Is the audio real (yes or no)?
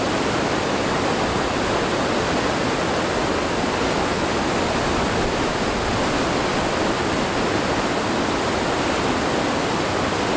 yes